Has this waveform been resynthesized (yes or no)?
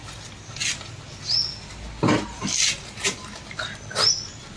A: no